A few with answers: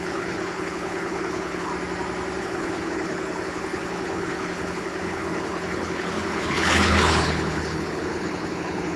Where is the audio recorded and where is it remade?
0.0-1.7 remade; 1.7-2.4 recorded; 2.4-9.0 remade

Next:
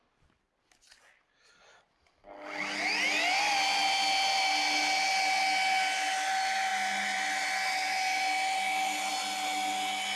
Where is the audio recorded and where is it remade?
0.0-10.2 recorded

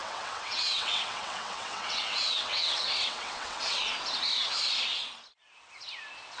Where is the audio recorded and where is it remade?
0.0-3.8 remade; 3.8-6.4 recorded

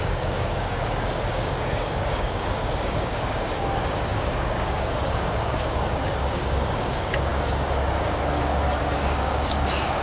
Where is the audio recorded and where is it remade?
0.0-10.0 remade

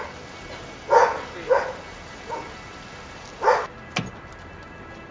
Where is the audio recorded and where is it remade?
0.0-5.1 recorded